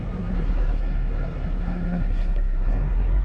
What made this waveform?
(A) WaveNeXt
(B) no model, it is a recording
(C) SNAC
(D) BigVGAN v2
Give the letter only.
C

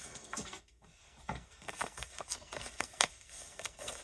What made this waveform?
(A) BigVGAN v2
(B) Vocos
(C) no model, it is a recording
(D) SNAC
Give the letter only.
D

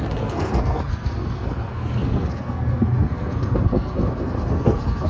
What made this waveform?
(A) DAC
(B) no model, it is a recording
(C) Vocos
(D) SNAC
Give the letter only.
D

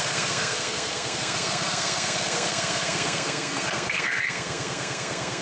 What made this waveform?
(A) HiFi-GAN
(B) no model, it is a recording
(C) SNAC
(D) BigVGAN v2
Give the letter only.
C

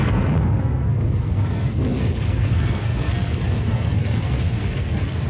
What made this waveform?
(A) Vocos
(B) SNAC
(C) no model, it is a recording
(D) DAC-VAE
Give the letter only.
B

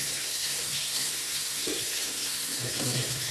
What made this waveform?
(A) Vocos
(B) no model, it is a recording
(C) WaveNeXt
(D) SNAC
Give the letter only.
D